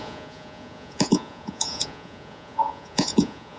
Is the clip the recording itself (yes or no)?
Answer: no